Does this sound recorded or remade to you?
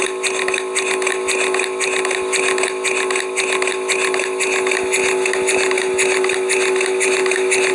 recorded